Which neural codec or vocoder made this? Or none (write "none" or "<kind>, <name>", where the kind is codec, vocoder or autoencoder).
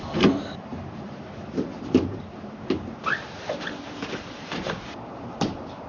vocoder, BigVGAN v2